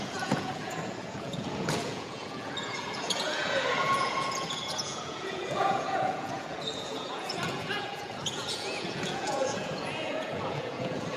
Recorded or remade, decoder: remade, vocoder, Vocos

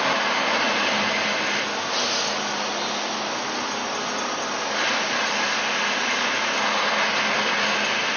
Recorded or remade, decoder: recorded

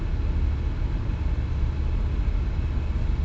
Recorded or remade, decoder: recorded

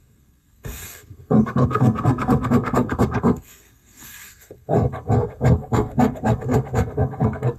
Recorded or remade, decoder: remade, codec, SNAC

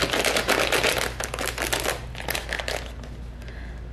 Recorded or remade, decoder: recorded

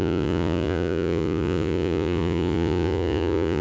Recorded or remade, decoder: remade, vocoder, Vocos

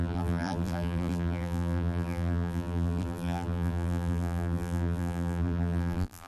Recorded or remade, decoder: remade, vocoder, BigVGAN v2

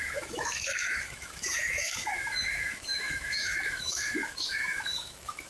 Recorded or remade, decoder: remade, autoencoder, DAC-VAE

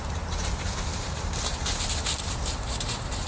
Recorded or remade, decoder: remade, vocoder, BigVGAN v2